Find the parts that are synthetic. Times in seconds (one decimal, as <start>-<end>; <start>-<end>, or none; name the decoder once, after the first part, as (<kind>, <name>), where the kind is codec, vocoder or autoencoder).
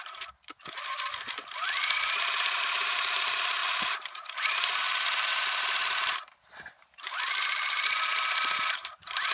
0.0-9.3 (vocoder, BigVGAN v2)